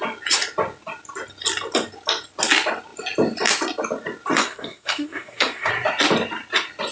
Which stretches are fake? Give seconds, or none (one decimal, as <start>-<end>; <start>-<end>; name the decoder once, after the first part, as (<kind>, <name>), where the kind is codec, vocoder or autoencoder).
4.4-5.7 (codec, SNAC)